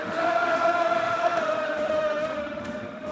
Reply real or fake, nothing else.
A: fake